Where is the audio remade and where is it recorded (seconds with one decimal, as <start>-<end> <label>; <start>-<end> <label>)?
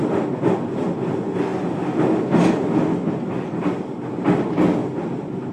0.0-5.5 recorded